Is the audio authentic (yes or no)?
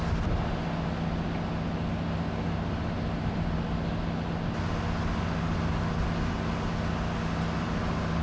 yes